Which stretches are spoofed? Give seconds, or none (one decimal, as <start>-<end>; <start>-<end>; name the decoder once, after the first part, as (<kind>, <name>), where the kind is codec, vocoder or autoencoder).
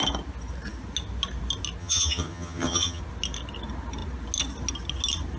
1.8-3.0 (vocoder, HiFi-GAN)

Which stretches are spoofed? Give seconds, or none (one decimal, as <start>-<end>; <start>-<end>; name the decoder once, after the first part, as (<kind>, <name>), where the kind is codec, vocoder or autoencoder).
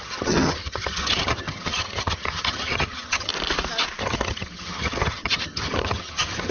0.0-3.3 (vocoder, HiFi-GAN); 4.0-6.5